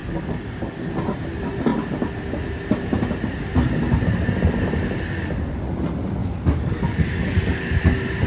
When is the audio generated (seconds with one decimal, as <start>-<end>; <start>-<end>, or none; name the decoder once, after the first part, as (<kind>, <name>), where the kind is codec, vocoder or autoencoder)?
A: 0.0-0.9 (codec, DAC); 6.2-7.7